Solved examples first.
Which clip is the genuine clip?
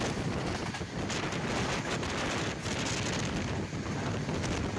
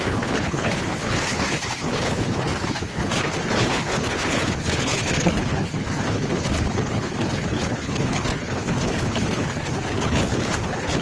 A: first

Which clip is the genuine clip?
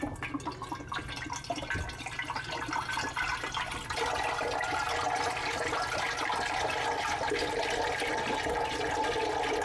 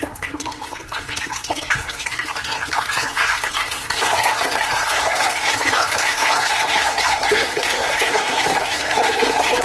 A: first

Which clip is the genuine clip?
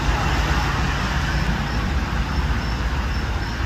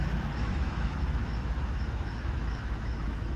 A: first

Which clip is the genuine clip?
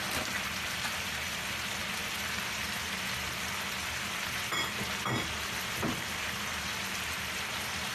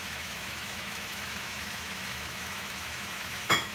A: first